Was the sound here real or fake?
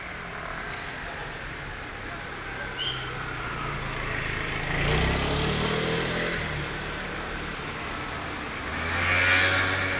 real